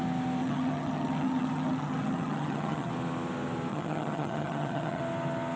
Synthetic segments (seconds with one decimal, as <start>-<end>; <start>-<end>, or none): 0.4-2.9; 3.7-5.0